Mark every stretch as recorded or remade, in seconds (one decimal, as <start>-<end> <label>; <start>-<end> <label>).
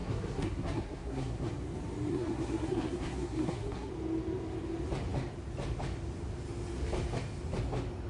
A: 0.0-1.5 remade; 1.5-2.1 recorded; 2.1-3.9 remade; 3.9-8.1 recorded